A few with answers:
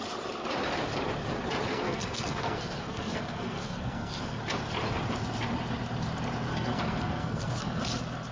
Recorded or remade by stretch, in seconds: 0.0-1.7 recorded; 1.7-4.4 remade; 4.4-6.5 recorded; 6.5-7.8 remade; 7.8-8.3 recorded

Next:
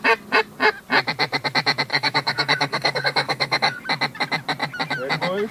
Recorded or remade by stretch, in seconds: 0.0-1.9 recorded; 1.9-3.8 remade; 3.8-5.5 recorded